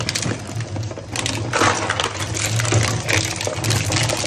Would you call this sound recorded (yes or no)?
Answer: yes